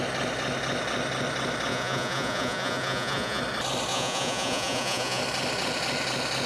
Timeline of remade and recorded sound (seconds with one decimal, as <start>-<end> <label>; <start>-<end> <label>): 0.0-1.7 recorded; 1.7-3.4 remade; 3.4-3.9 recorded; 3.9-5.2 remade; 5.2-6.5 recorded